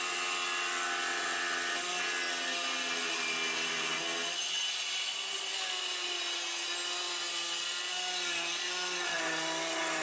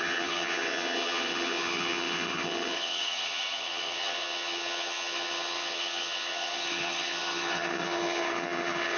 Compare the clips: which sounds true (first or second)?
first